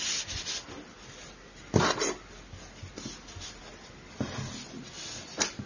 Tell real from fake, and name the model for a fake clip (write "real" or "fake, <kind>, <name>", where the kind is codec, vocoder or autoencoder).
real